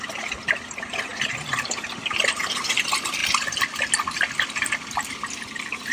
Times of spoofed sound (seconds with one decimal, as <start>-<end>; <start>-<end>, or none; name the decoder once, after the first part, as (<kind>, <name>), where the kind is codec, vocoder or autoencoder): 0.0-1.1 (vocoder, BigVGAN v2); 2.4-3.2; 5.1-5.9